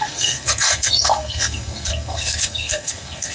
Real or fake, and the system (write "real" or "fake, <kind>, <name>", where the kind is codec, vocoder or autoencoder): fake, codec, SNAC